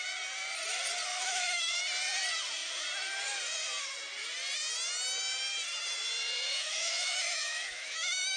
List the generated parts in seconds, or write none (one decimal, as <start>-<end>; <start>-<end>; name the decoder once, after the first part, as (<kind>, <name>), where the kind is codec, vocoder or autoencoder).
1.1-1.8 (autoencoder, DAC-VAE); 6.5-8.4